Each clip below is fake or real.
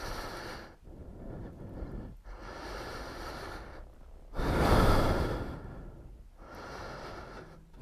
real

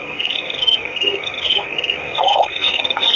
fake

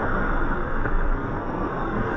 fake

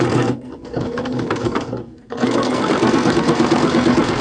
fake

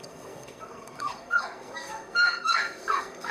fake